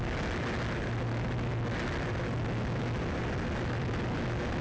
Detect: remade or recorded recorded